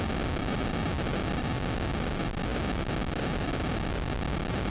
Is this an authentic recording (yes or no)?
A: yes